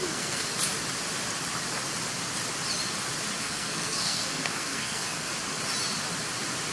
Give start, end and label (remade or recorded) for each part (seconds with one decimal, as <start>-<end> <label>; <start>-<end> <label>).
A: 0.0-0.5 remade; 0.5-3.4 recorded; 3.4-5.3 remade; 5.3-6.7 recorded